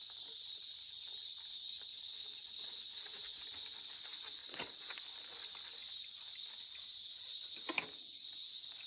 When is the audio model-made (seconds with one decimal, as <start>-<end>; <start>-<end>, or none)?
1.9-3.4; 4.4-5.0